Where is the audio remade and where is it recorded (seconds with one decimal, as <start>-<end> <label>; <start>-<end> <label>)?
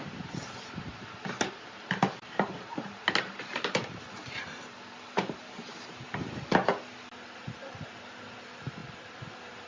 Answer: 0.0-0.9 recorded; 0.9-6.1 remade; 6.1-8.8 recorded; 8.8-9.7 remade